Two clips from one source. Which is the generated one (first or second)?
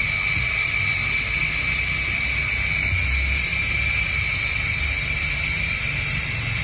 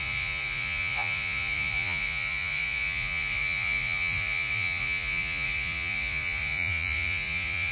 second